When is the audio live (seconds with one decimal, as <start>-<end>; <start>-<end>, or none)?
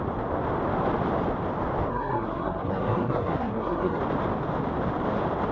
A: 0.0-1.9; 4.0-5.5